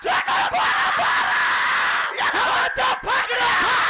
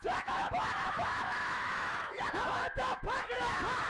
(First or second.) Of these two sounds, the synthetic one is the second